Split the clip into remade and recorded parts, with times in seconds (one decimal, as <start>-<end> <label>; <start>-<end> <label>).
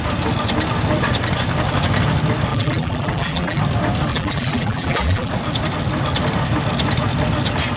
0.0-2.5 recorded; 2.5-3.6 remade; 3.6-4.1 recorded; 4.1-5.3 remade; 5.3-7.8 recorded